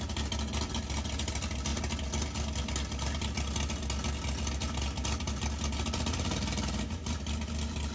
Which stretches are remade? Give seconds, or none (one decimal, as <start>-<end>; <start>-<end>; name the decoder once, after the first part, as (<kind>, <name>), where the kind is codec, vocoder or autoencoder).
none